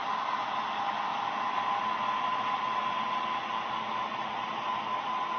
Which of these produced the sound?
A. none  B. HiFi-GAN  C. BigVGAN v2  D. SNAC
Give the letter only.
A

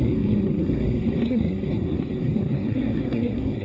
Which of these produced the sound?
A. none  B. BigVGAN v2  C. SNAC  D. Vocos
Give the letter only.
C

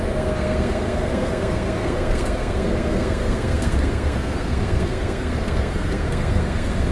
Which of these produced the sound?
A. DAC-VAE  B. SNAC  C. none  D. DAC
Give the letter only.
B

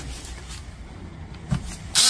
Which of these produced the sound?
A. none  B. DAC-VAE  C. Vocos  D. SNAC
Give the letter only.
A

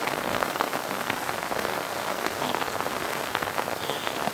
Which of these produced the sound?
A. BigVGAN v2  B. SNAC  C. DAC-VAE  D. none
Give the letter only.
B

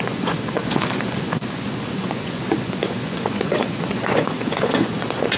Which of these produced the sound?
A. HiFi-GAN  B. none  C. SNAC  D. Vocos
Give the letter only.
D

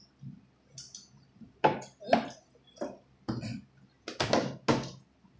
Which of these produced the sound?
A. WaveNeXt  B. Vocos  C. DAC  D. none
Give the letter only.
D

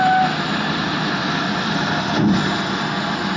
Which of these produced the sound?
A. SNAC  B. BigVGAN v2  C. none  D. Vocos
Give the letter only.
C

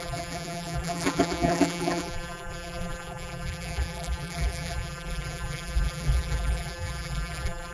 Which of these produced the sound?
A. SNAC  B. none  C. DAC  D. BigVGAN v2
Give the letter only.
D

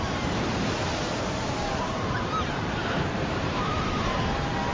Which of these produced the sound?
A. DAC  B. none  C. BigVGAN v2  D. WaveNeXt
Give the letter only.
C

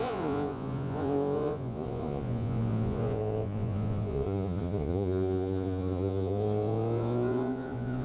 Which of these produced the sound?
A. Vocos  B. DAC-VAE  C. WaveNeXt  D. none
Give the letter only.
A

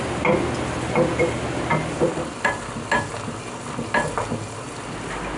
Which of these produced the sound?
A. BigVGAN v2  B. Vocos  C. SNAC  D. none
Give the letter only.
D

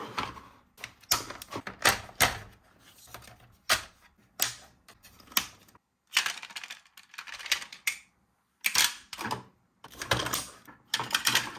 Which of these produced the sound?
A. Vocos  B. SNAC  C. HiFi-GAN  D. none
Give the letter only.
D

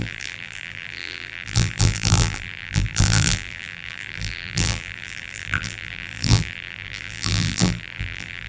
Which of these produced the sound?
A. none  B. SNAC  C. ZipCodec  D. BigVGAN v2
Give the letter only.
D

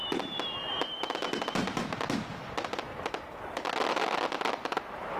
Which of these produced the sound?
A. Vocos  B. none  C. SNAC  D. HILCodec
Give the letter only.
B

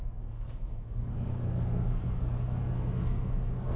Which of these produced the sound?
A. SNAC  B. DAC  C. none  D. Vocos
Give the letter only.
A